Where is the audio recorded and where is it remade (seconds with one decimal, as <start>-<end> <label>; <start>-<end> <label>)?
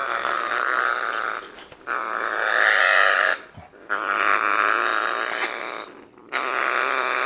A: 0.0-0.8 remade; 0.8-7.3 recorded